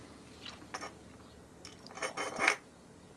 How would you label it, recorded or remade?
recorded